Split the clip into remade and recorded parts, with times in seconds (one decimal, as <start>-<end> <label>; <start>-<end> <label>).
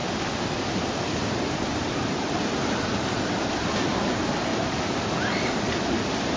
0.0-3.8 remade; 3.8-6.4 recorded